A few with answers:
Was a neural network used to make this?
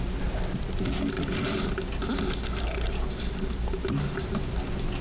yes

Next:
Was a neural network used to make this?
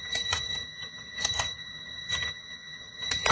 yes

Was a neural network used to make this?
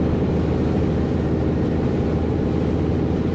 no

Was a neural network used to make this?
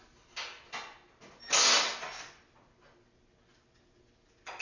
no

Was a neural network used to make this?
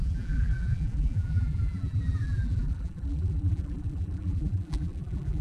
yes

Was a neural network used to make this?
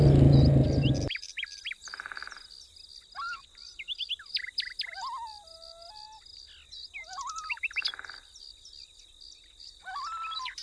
no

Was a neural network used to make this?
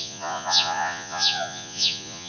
yes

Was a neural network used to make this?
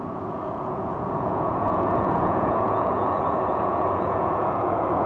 yes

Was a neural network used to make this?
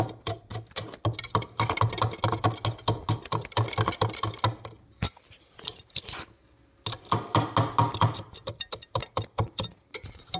no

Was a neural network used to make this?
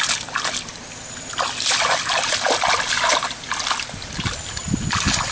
no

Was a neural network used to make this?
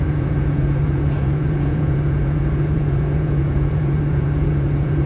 yes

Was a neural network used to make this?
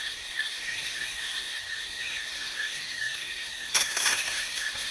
yes